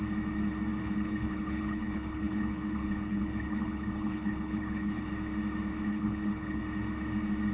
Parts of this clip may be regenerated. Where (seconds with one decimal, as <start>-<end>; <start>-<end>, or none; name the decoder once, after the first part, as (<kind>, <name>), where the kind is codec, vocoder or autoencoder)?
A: 0.8-5.1 (codec, HILCodec); 5.9-6.6